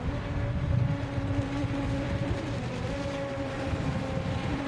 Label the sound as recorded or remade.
recorded